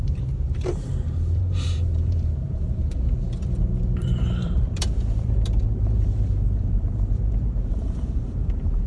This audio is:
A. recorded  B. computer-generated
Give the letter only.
B